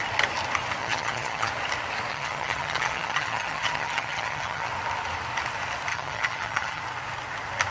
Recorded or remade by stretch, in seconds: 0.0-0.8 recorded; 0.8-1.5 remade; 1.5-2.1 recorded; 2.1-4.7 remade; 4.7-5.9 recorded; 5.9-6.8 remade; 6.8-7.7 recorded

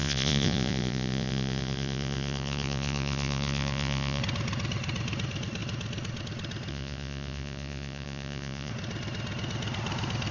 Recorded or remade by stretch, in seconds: 0.0-4.2 remade; 4.2-6.7 recorded; 6.7-8.7 remade; 8.7-10.3 recorded

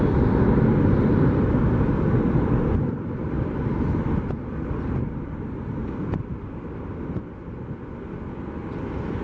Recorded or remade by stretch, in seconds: 0.0-3.2 recorded; 3.2-7.6 remade; 7.6-9.2 recorded